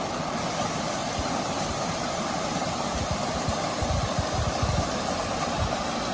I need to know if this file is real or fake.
real